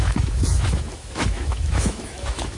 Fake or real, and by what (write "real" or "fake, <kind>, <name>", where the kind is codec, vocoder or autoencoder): fake, autoencoder, DAC-VAE